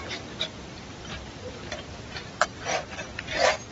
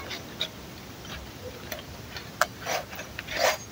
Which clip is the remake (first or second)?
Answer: first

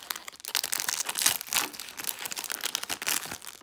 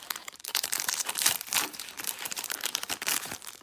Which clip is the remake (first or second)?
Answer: second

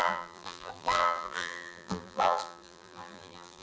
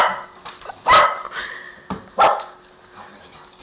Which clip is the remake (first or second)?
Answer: first